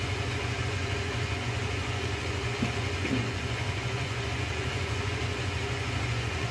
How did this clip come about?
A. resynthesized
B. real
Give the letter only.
A